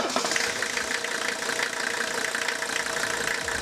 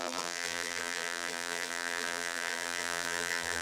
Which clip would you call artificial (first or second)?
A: second